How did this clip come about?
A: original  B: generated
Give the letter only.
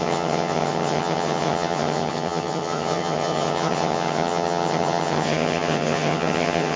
B